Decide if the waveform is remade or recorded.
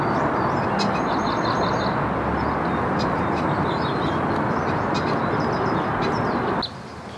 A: recorded